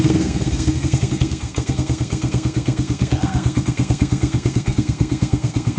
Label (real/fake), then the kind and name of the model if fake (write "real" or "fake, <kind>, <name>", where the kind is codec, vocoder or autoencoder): fake, codec, SNAC